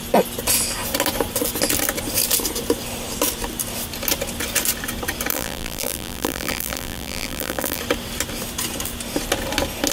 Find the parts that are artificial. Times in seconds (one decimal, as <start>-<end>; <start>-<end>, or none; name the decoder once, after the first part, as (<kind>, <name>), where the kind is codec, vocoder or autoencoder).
5.3-7.8 (vocoder, BigVGAN v2)